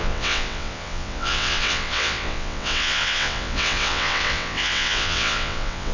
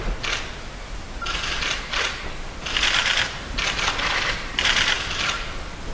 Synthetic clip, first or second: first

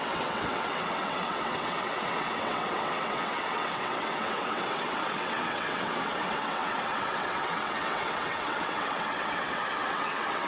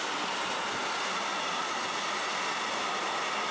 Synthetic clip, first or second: first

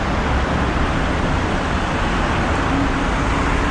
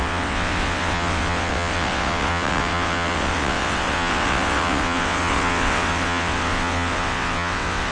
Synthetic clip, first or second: second